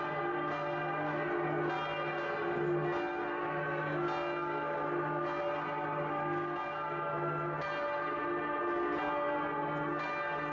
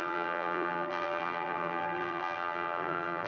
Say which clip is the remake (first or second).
second